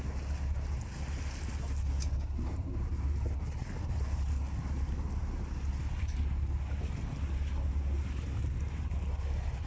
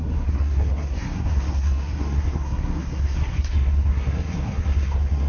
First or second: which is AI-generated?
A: second